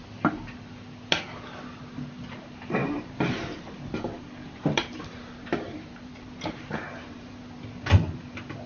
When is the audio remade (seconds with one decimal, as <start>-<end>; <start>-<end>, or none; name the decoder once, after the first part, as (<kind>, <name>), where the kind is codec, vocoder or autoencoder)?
2.8-3.7 (vocoder, BigVGAN v2); 4.4-7.3